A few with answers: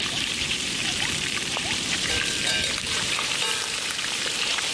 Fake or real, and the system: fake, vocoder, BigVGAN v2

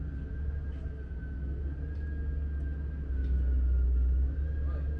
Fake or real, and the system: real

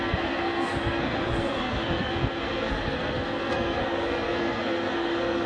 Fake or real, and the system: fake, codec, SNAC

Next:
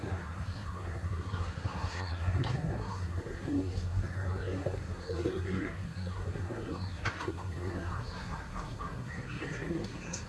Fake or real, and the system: fake, codec, SNAC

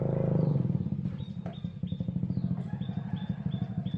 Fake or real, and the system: real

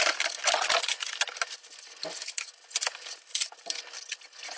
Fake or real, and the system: real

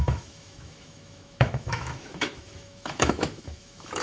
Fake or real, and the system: fake, autoencoder, DAC-VAE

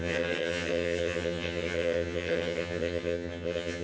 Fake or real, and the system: fake, vocoder, HiFi-GAN